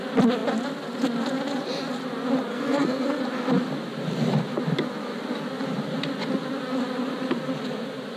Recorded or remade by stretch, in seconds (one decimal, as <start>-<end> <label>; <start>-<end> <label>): 0.0-2.5 recorded; 2.5-3.2 remade; 3.2-8.2 recorded